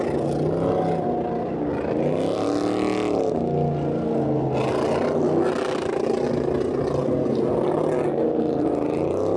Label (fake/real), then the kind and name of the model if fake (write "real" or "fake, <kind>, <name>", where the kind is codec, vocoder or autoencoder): real